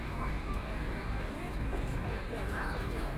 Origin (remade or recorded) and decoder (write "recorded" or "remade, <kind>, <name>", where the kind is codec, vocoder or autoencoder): remade, codec, DAC